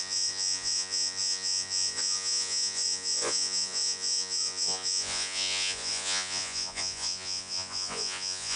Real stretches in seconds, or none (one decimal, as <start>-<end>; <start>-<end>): none